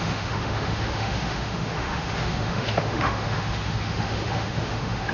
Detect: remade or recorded remade